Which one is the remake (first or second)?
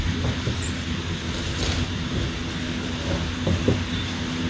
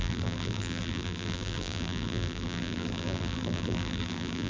second